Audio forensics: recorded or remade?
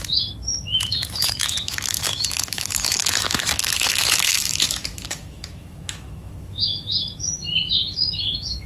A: remade